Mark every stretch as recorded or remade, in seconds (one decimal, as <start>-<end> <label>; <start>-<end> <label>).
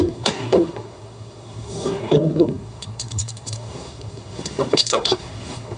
0.0-5.8 remade